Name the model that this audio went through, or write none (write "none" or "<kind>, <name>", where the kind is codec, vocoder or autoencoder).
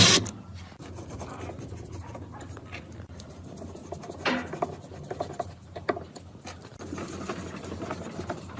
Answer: none